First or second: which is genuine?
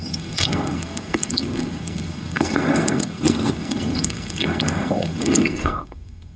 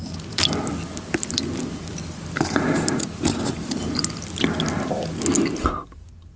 second